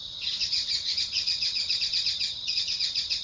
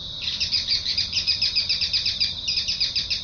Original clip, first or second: second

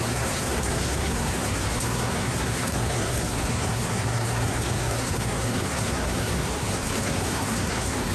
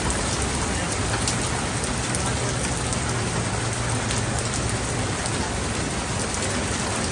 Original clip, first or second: second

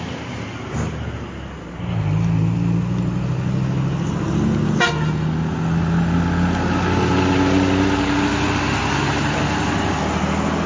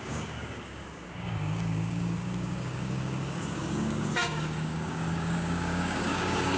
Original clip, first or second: first